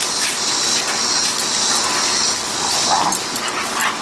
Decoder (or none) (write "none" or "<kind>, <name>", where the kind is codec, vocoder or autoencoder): none